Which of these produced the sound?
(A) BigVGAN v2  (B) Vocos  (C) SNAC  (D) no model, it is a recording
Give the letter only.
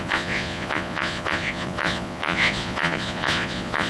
B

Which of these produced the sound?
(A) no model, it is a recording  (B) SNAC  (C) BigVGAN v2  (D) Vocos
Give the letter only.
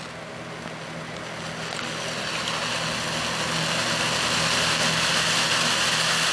A